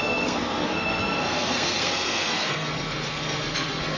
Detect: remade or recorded remade